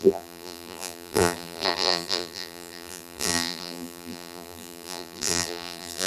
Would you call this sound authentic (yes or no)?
no